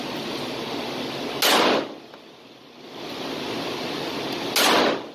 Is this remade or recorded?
recorded